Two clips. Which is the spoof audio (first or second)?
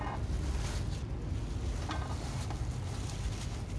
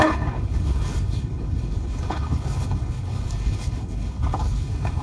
second